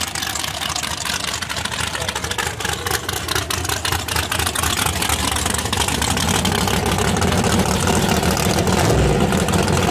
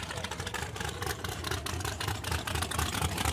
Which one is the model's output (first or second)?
second